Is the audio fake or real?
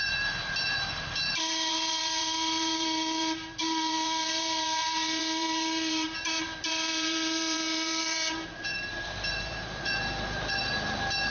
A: fake